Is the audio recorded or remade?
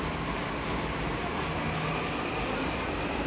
recorded